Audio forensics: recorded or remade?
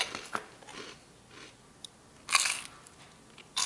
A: recorded